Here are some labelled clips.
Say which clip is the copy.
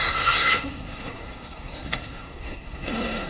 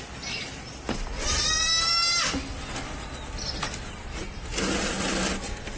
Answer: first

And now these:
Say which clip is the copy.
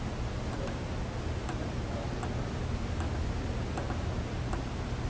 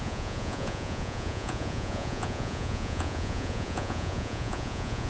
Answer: second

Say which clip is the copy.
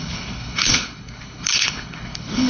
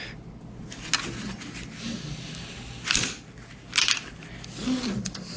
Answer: first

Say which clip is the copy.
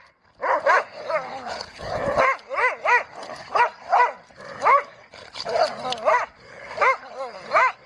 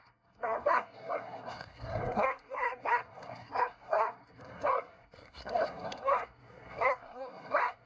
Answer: second